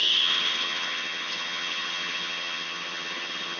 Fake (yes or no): yes